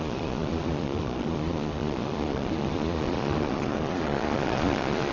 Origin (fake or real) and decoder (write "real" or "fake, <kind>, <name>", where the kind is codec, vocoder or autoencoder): fake, vocoder, Vocos